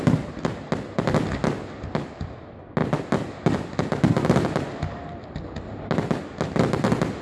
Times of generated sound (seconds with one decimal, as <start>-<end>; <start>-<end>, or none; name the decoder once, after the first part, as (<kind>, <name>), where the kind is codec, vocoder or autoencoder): none